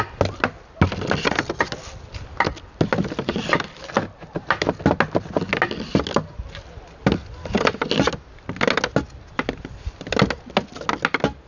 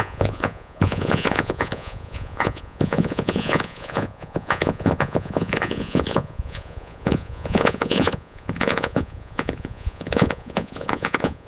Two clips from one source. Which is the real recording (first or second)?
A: first